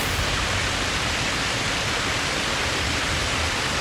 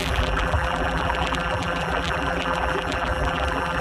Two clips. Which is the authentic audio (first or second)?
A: first